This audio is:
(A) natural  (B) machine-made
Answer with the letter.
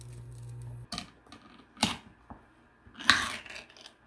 A